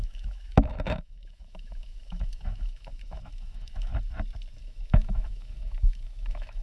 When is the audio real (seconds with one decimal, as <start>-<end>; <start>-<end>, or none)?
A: 3.9-4.6